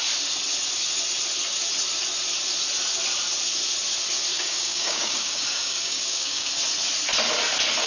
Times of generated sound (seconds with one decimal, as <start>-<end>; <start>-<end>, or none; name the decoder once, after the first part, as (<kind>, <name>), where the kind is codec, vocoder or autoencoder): 4.3-6.5 (codec, DAC)